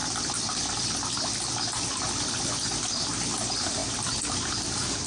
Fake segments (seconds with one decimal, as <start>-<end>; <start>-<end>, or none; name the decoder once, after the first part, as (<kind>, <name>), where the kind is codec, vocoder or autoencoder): none